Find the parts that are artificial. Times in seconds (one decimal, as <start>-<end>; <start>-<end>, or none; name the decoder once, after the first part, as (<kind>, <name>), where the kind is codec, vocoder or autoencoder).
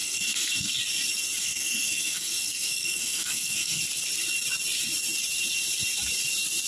0.0-0.8 (codec, SNAC); 1.4-3.8